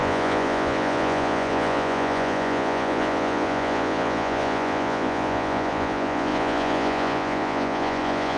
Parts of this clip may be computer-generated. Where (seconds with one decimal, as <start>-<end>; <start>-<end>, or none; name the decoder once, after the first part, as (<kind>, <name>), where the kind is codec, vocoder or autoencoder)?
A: 0.0-8.4 (vocoder, Vocos)